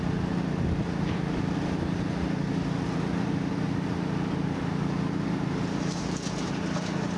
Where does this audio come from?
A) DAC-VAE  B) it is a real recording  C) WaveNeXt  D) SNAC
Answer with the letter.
B